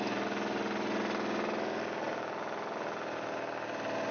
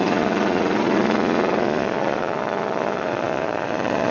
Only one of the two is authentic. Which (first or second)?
first